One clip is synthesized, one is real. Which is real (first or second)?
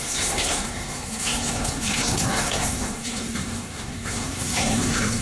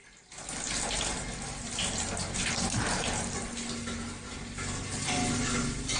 second